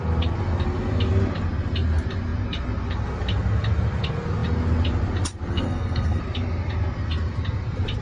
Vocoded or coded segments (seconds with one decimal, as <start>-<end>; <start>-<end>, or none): 5.5-6.2